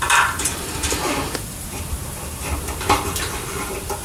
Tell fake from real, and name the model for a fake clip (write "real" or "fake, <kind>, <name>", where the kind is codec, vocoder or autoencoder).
fake, vocoder, BigVGAN v2